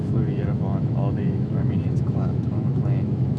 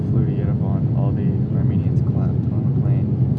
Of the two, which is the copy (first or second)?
first